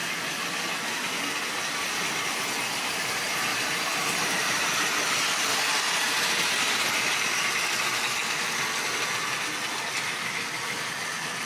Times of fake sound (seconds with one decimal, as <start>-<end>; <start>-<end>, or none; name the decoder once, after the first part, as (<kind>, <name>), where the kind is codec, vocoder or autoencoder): 3.5-4.9 (vocoder, BigVGAN v2); 5.5-7.2